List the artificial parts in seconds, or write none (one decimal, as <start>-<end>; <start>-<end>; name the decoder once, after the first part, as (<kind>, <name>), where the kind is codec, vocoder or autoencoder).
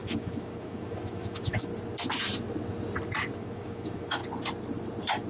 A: 0.0-1.7 (autoencoder, DAC-VAE); 3.3-4.2